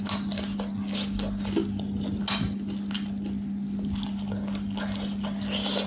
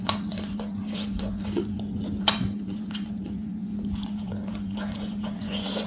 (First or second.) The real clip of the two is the first